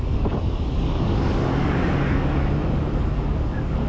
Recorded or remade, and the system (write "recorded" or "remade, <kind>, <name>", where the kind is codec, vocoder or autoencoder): remade, codec, DAC